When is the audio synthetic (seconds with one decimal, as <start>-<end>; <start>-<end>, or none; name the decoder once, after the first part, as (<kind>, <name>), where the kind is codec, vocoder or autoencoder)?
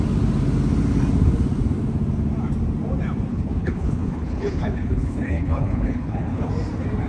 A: 3.3-6.5 (codec, HILCodec)